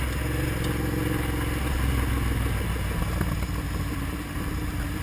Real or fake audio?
real